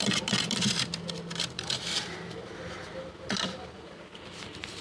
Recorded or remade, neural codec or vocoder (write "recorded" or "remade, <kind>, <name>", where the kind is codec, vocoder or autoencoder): remade, vocoder, BigVGAN v2